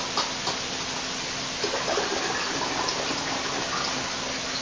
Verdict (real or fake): real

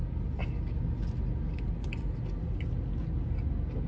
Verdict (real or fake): real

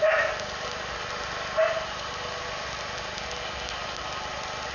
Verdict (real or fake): real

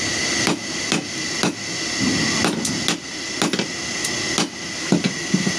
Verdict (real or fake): real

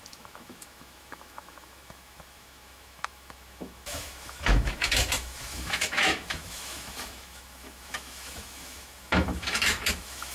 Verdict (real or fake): fake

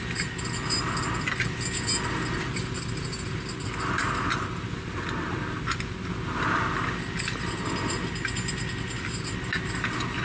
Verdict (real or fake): real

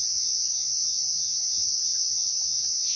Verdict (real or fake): fake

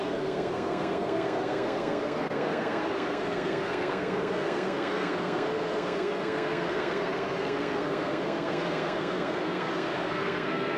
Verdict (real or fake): fake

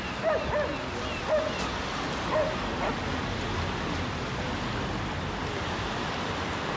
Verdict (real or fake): real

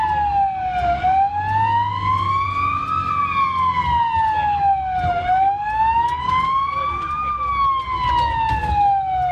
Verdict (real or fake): real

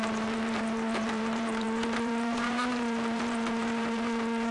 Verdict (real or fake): fake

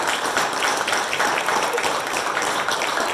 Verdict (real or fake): fake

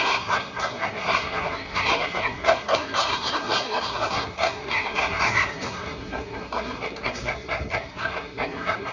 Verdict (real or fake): fake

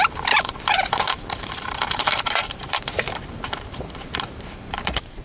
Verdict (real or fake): fake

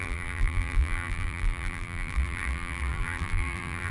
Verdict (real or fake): fake